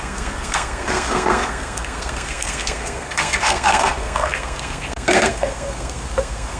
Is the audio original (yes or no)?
no